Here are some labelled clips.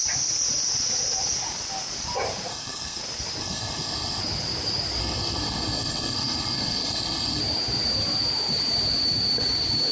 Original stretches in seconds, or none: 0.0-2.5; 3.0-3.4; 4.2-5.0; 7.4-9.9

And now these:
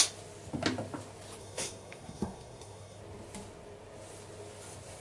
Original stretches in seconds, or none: 0.0-1.4; 3.0-5.0

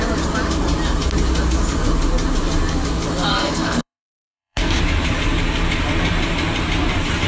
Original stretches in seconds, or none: 0.0-3.3; 4.8-7.3

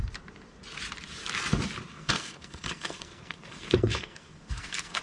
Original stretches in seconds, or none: 0.0-1.9

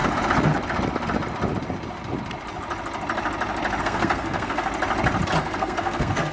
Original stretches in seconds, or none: 0.0-3.8; 4.7-5.4

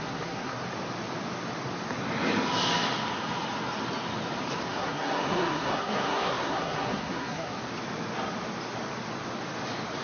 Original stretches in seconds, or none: 0.6-4.7; 7.6-10.0

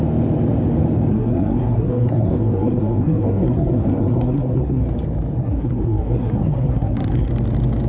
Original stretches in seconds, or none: 0.0-1.1; 4.8-5.4; 7.3-7.9

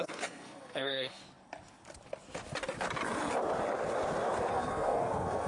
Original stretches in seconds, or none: 1.2-4.5